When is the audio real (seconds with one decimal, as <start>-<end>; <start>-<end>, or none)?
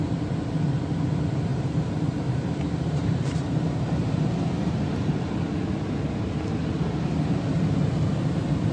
0.0-1.5; 5.3-8.7